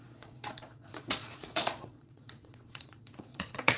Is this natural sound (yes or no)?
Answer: no